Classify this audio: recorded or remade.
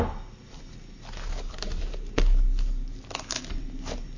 recorded